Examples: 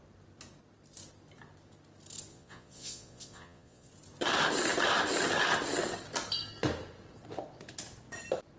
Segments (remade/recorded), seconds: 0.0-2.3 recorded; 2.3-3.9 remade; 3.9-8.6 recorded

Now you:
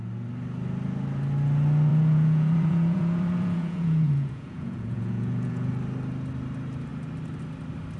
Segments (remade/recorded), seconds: 0.0-1.9 recorded; 1.9-5.7 remade; 5.7-8.0 recorded

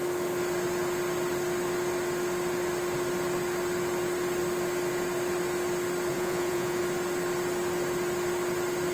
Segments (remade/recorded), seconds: 0.0-6.1 recorded; 6.1-6.8 remade; 6.8-8.9 recorded

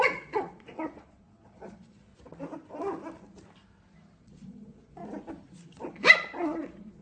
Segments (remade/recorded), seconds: 0.0-2.1 remade; 2.1-4.2 recorded; 4.2-5.0 remade; 5.0-5.5 recorded; 5.5-7.0 remade

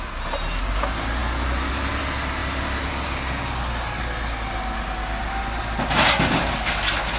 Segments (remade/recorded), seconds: 0.0-7.2 recorded

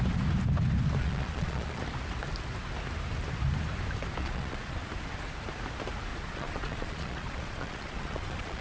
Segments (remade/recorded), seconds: 0.0-1.0 recorded; 1.0-1.8 remade; 1.8-4.2 recorded; 4.2-4.9 remade; 4.9-6.1 recorded; 6.1-8.6 remade

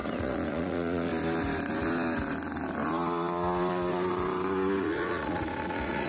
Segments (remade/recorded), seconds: 0.0-1.1 remade; 1.1-4.8 recorded; 4.8-6.1 remade

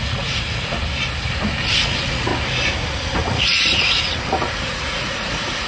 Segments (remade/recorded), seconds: 0.0-0.8 remade; 0.8-1.7 recorded; 1.7-2.3 remade; 2.3-3.3 recorded; 3.3-5.7 remade